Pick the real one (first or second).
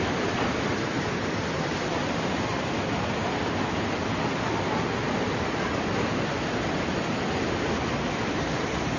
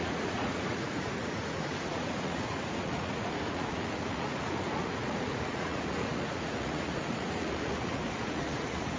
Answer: first